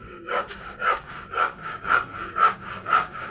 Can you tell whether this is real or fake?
fake